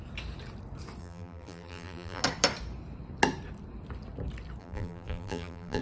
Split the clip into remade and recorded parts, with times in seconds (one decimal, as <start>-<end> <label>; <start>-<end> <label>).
0.0-1.0 recorded; 1.0-2.2 remade; 2.2-4.6 recorded; 4.6-5.8 remade